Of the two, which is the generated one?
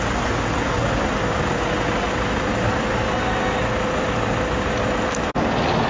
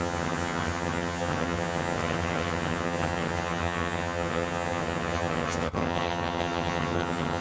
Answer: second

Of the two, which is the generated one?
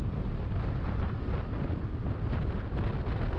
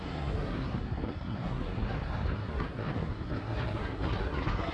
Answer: second